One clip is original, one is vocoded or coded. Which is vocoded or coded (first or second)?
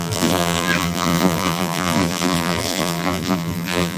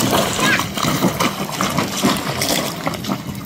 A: first